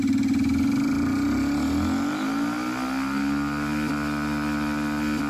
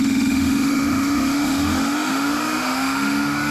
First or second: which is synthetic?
second